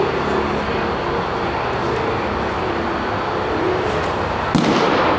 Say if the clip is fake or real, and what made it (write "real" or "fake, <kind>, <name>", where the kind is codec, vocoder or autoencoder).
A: real